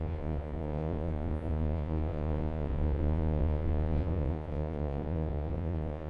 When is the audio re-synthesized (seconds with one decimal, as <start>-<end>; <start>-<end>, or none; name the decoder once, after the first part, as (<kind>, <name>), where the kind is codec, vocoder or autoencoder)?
0.0-6.1 (vocoder, Vocos)